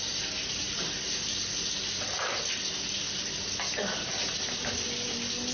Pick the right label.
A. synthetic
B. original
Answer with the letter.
B